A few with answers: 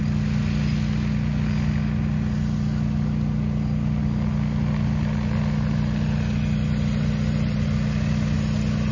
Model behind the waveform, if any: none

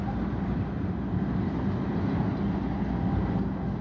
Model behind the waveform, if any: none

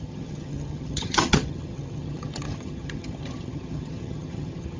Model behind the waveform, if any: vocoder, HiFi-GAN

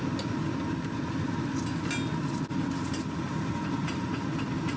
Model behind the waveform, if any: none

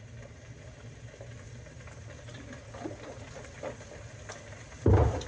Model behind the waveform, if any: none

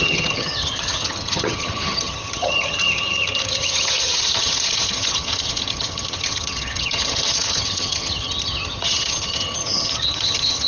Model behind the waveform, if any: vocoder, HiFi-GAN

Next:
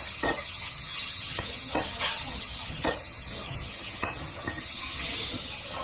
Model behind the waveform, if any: vocoder, HiFi-GAN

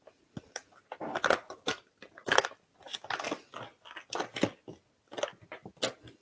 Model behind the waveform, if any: none